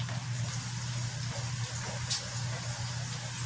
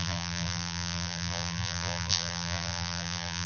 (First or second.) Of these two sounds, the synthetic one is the second